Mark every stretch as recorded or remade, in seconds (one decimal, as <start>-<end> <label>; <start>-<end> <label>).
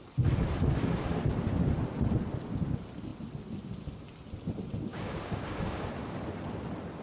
0.0-4.9 recorded; 4.9-5.9 remade; 5.9-7.0 recorded